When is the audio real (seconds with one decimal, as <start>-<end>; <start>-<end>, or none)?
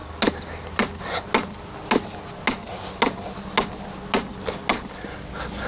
0.0-5.7